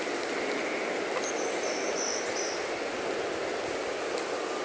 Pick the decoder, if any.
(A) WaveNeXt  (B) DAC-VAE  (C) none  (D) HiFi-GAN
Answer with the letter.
C